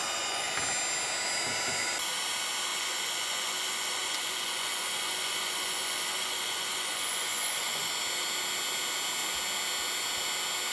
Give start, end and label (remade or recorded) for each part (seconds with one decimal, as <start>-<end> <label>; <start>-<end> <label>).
0.0-0.5 remade; 0.5-2.7 recorded; 2.7-7.9 remade; 7.9-10.7 recorded